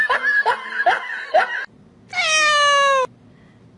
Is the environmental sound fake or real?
real